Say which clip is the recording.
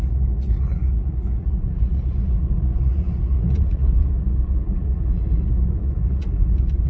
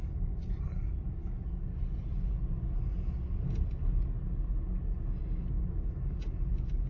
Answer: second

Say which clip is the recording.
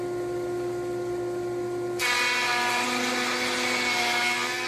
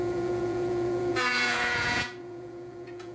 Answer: first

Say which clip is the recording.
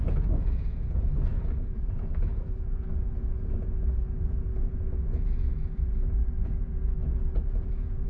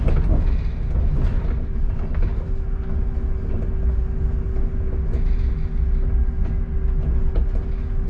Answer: second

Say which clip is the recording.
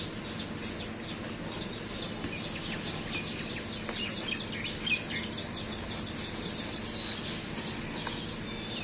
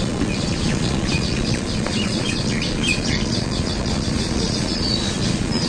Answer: first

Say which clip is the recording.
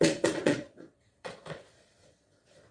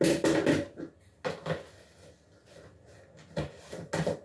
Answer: second